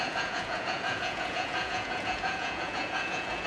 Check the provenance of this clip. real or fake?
fake